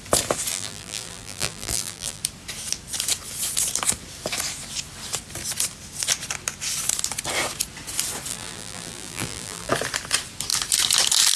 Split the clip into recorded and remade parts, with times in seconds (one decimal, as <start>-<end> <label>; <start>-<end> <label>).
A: 0.0-0.5 recorded; 0.5-2.2 remade; 2.2-8.3 recorded; 8.3-9.7 remade; 9.7-11.4 recorded